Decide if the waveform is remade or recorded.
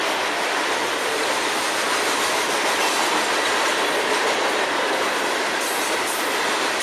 recorded